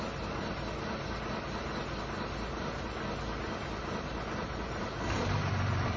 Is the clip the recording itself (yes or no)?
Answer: yes